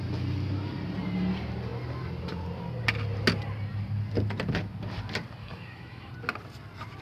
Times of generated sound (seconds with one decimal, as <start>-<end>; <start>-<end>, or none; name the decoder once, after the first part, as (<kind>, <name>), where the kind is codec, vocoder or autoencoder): 5.4-6.1 (autoencoder, DAC-VAE)